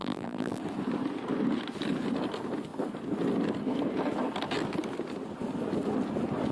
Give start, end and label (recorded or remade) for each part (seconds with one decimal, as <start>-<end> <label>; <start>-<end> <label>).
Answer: 0.0-0.6 remade; 0.6-6.5 recorded